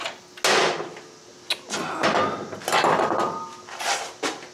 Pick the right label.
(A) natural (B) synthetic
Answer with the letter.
A